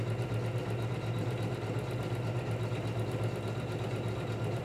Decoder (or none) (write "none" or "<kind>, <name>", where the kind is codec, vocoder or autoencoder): none